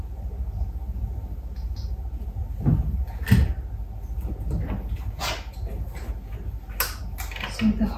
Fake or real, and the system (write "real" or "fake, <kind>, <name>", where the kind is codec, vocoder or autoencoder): real